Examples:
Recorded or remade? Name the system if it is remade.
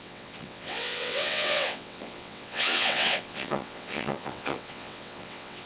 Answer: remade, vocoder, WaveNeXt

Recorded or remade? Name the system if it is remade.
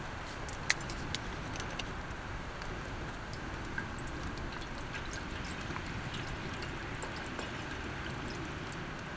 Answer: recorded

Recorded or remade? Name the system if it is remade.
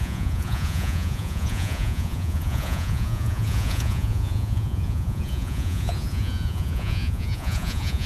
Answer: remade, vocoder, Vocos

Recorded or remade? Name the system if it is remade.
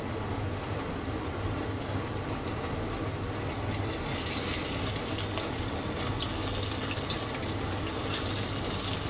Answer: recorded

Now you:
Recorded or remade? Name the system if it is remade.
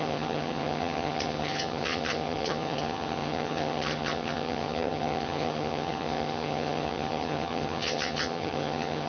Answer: remade, vocoder, HiFi-GAN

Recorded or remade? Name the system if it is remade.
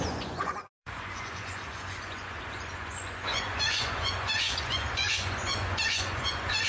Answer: remade, vocoder, Vocos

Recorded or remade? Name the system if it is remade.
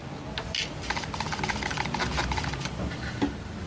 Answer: recorded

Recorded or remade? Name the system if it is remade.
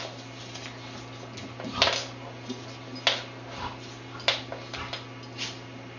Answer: recorded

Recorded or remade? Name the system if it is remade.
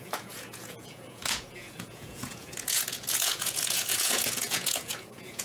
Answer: remade, vocoder, Vocos